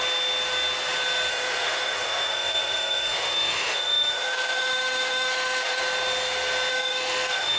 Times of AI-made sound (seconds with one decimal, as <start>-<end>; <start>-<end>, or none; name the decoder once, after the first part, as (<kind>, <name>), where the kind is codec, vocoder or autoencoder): 1.3-5.8 (autoencoder, DAC-VAE); 6.7-7.6